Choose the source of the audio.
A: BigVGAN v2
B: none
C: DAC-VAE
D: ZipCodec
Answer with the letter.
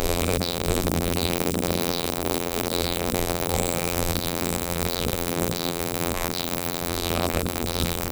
A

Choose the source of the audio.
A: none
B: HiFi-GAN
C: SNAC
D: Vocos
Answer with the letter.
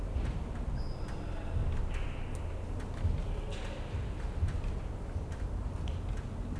A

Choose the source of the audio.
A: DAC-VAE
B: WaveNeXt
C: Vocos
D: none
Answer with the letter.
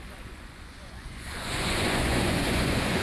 C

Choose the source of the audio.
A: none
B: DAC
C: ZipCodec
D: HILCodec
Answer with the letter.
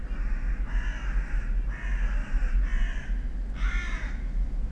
A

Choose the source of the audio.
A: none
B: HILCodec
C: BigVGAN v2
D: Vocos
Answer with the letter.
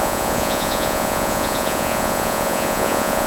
D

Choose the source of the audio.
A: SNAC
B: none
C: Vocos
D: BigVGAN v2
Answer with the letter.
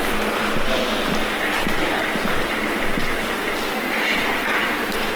B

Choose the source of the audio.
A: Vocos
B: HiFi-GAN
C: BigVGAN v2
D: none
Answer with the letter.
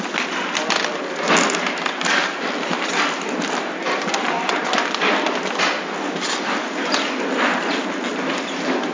D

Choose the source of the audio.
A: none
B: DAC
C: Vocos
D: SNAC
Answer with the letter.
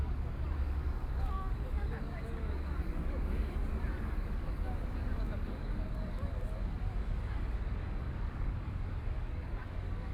B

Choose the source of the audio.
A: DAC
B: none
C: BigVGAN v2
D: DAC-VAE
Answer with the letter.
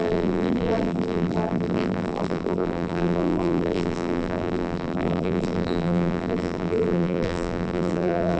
C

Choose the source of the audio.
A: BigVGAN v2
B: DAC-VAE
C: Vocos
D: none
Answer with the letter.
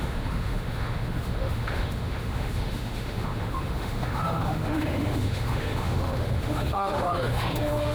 B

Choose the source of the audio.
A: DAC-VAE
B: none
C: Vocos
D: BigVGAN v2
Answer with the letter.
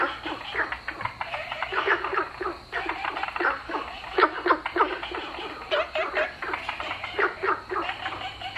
B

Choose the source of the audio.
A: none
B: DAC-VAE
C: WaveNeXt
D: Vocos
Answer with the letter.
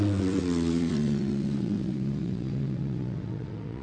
C